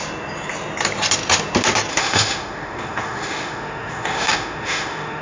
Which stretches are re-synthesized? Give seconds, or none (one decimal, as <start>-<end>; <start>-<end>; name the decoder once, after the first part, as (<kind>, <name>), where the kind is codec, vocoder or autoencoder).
1.9-5.2 (autoencoder, DAC-VAE)